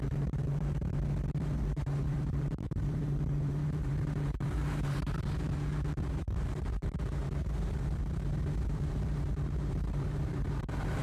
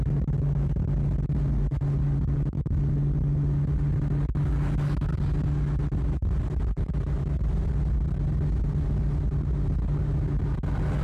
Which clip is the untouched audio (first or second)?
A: second